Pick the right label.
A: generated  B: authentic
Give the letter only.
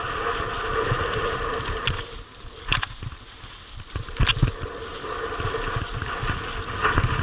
B